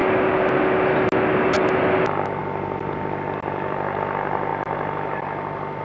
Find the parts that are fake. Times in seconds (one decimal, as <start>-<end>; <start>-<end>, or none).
none

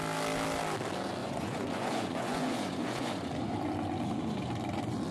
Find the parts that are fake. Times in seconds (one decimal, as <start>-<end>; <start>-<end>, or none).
1.2-3.3

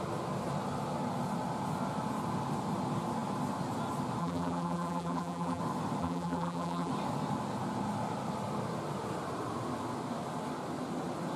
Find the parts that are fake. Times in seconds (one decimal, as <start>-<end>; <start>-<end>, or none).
4.2-5.6; 6.0-6.9

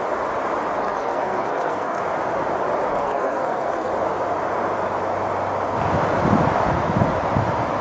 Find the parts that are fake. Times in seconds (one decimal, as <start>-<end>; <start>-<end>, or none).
0.8-2.0; 2.9-3.9

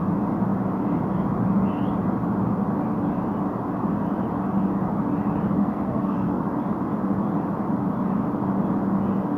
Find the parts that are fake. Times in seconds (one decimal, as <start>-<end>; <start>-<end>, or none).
5.6-6.5

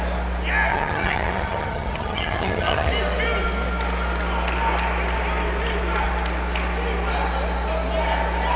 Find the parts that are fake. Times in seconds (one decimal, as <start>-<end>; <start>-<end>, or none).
0.7-2.9

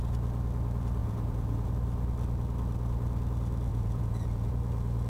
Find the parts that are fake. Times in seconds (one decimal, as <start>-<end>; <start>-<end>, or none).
1.0-1.7; 3.7-4.5